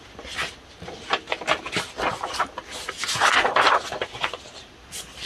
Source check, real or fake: real